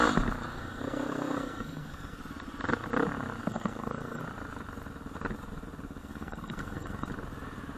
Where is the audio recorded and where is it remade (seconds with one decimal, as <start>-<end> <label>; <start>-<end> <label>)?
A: 0.0-0.5 recorded; 0.5-2.2 remade; 2.2-3.4 recorded; 3.4-4.2 remade; 4.2-6.0 recorded; 6.0-7.1 remade; 7.1-7.8 recorded